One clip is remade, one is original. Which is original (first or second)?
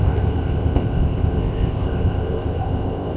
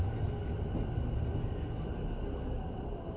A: second